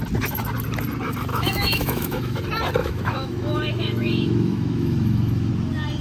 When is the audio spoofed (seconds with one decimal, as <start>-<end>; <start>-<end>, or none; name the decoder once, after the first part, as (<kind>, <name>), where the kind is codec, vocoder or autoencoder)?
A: 1.3-2.4 (autoencoder, DAC-VAE); 2.8-5.5